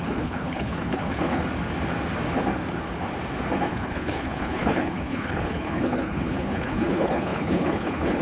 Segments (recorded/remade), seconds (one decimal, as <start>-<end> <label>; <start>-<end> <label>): 0.0-1.4 remade; 1.4-3.7 recorded; 3.7-8.2 remade